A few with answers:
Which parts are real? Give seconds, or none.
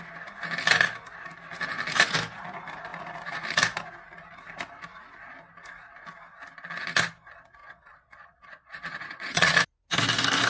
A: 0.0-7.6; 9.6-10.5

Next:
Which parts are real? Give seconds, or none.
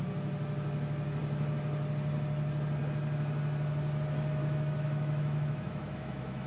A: 0.0-4.4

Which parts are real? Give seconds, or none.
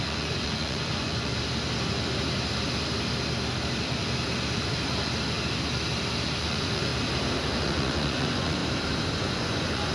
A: 1.3-6.4; 6.9-7.6; 8.6-9.1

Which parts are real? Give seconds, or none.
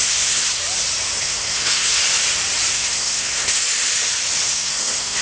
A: 0.6-1.2; 2.0-2.7; 3.6-4.4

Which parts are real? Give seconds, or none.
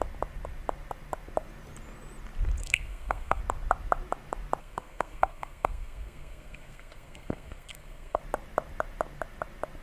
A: 0.0-2.6; 3.4-4.6; 8.2-9.8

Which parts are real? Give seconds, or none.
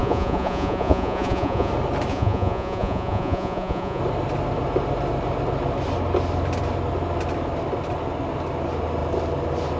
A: 1.7-2.1; 4.0-9.8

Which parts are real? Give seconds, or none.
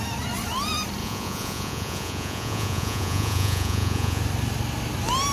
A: 0.0-1.0; 4.2-5.3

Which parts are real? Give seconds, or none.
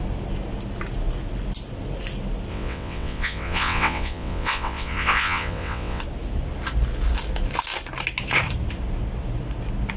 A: 0.0-2.5; 6.0-10.0